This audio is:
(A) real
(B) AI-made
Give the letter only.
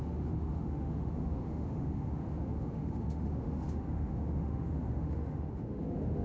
B